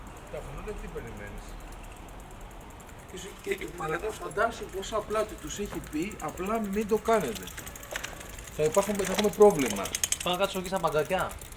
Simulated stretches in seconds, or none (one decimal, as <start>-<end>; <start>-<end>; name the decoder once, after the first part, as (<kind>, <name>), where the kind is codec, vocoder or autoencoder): 3.3-4.3 (codec, SNAC)